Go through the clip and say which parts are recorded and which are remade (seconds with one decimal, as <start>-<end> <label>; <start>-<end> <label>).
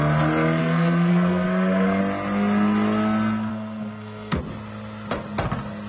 0.0-0.6 recorded; 0.6-2.0 remade; 2.0-3.5 recorded; 3.5-4.4 remade; 4.4-5.9 recorded